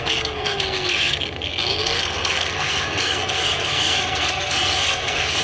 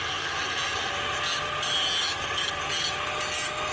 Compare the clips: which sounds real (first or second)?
second